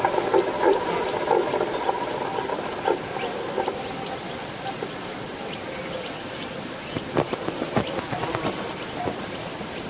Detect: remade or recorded recorded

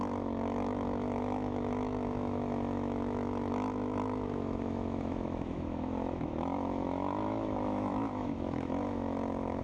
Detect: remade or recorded remade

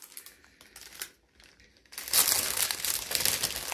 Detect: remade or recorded recorded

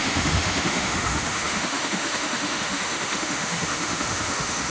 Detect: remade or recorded remade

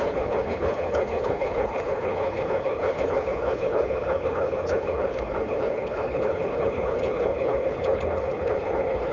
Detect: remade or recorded remade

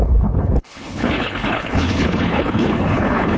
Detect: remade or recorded remade